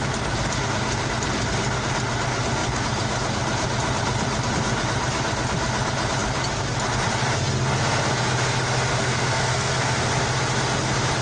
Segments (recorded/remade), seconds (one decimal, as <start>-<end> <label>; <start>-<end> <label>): 0.0-8.9 recorded; 8.9-10.1 remade; 10.1-11.2 recorded